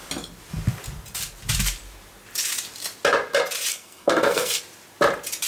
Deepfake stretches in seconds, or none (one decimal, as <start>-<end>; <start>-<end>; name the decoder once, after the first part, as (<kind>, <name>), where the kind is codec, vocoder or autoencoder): 3.7-4.6 (codec, SNAC)

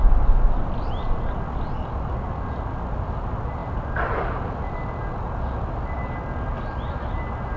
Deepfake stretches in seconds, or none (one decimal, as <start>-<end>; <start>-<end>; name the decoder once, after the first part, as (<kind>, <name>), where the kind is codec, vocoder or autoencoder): none

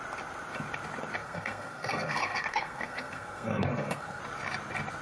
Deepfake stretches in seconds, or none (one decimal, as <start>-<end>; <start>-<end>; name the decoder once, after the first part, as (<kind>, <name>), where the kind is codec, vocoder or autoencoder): 1.2-4.2 (codec, SNAC)

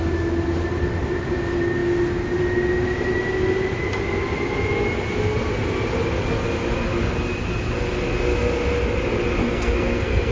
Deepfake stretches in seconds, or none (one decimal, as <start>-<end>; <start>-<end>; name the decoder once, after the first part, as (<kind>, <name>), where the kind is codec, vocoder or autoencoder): 9.4-10.3 (codec, SNAC)